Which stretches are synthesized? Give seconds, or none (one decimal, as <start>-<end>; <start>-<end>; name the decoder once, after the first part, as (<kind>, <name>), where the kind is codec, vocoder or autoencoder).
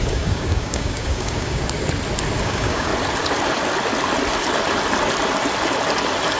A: 0.0-1.6 (codec, DAC); 2.4-2.9